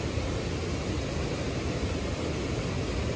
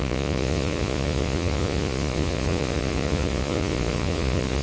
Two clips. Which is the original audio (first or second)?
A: first